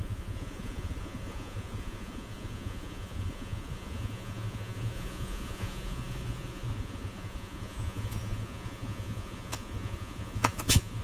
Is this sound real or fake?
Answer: fake